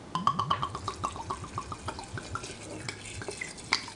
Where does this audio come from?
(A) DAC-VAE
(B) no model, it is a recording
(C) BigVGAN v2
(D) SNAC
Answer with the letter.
B